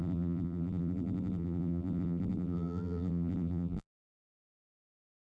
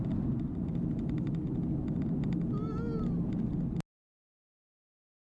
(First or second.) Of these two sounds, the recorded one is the second